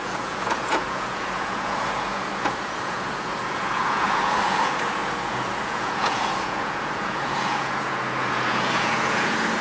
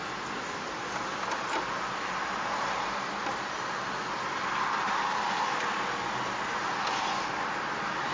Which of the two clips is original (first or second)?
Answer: second